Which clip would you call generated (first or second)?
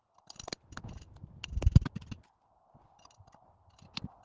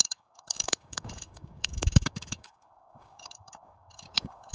second